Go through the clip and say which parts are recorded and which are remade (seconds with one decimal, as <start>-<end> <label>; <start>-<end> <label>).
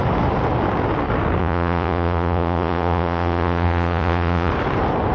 0.0-1.4 recorded; 1.4-4.5 remade; 4.5-5.1 recorded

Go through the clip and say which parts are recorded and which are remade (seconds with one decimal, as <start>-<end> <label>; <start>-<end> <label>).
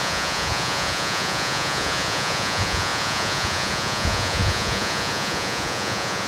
0.0-6.3 remade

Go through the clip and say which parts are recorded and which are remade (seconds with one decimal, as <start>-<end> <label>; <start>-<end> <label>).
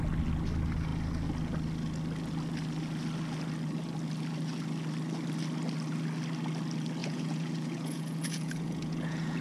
0.0-7.0 recorded; 7.0-9.4 remade